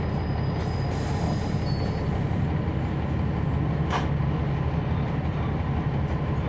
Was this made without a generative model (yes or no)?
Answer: yes